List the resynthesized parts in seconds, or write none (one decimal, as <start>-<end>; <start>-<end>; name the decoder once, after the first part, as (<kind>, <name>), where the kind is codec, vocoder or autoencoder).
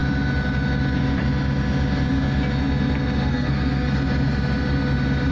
3.3-3.9 (codec, SNAC)